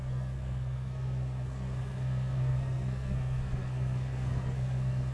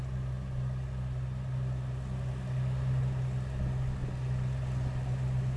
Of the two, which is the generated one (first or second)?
first